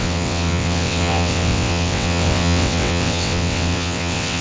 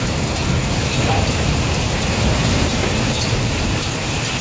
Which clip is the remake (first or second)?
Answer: first